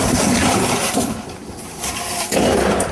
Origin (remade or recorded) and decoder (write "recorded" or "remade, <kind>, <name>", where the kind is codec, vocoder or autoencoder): remade, vocoder, BigVGAN v2